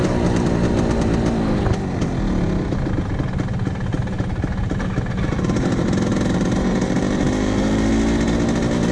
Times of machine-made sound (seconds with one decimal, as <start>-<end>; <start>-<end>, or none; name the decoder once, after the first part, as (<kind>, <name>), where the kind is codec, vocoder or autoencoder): 6.1-7.9 (vocoder, BigVGAN v2)